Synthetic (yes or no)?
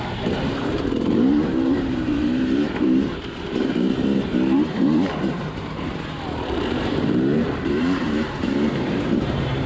yes